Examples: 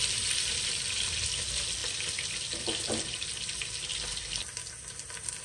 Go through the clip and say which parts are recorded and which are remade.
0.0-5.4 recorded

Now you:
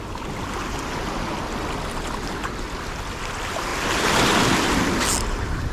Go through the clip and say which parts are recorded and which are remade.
0.0-5.7 recorded